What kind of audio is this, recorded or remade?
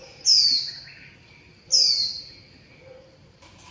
remade